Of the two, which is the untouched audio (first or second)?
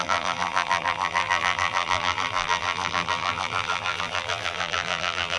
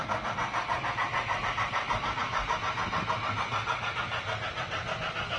second